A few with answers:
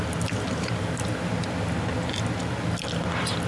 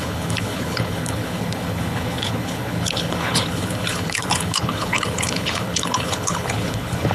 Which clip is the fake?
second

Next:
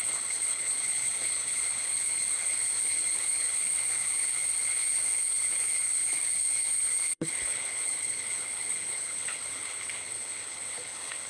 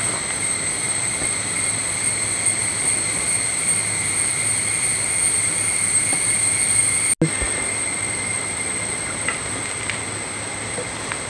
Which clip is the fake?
first